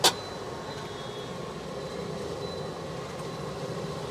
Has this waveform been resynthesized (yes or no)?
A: no